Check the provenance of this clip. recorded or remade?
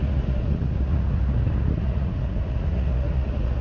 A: remade